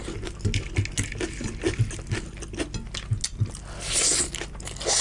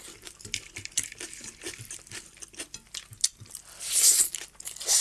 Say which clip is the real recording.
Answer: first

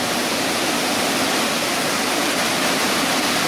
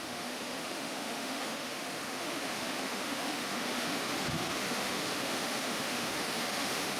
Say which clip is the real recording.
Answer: first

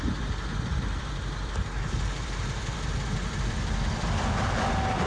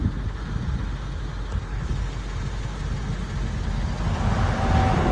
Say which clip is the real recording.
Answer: second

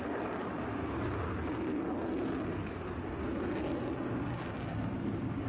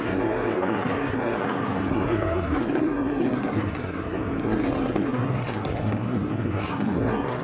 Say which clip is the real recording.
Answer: first